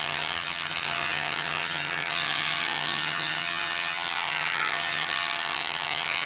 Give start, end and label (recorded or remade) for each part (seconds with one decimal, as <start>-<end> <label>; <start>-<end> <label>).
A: 0.0-6.3 remade